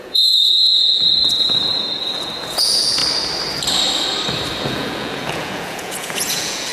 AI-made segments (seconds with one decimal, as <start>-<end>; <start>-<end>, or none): 0.0-3.0; 4.6-6.7